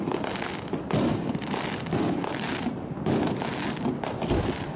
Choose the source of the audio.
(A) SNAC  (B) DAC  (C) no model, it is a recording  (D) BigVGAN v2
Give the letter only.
D